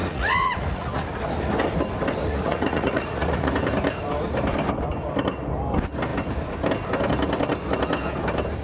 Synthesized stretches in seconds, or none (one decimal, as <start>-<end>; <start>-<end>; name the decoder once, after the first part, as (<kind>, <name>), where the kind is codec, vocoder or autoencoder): 0.0-1.2 (vocoder, Vocos); 2.2-3.5